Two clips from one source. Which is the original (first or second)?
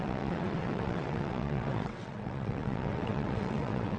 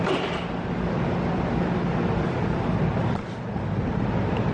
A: second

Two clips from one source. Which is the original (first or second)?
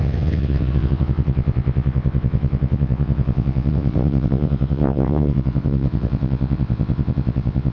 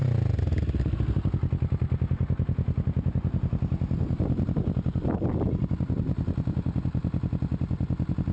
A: second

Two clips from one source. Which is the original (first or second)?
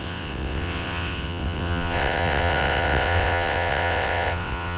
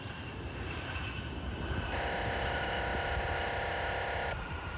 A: second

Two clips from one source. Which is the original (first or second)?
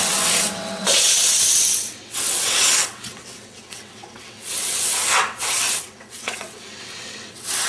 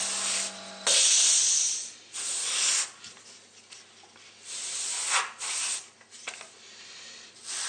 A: second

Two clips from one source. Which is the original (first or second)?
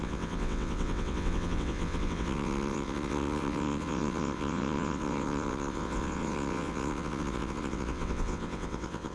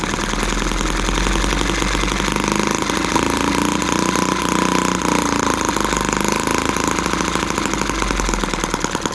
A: second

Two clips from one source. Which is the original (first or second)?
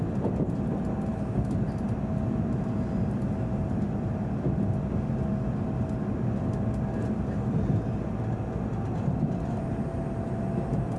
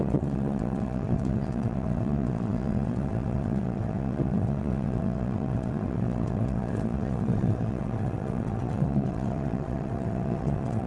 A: first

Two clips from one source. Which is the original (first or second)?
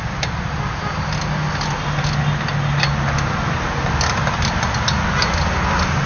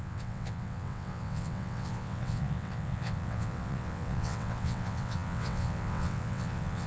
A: first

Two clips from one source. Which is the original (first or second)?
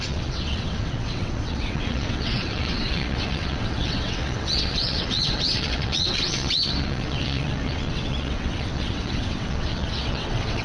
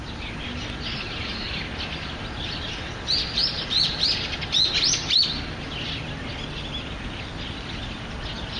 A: second